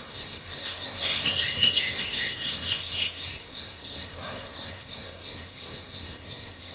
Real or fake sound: fake